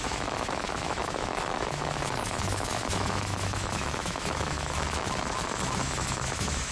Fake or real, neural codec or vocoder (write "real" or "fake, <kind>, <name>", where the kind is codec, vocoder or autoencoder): fake, autoencoder, DAC-VAE